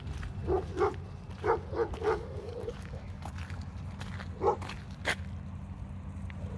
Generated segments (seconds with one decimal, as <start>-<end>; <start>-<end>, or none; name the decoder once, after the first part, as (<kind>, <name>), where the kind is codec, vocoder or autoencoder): 2.0-3.3 (codec, DAC)